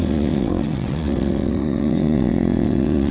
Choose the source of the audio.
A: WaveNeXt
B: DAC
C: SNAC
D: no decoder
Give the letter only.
A